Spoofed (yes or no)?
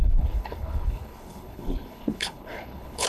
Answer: yes